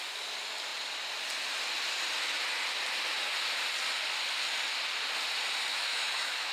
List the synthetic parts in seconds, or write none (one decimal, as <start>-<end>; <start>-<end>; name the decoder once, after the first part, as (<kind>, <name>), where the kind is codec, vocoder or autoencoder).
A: 5.7-6.5 (autoencoder, DAC-VAE)